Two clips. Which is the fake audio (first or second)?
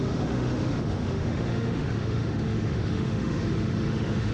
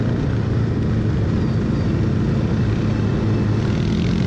first